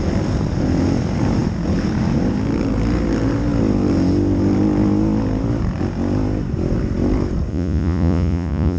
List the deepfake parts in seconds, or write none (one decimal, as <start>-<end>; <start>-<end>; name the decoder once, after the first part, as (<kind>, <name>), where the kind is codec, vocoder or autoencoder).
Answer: 7.5-8.8 (vocoder, Vocos)